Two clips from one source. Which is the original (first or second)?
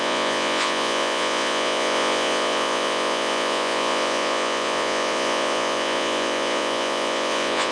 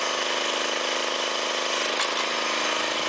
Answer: second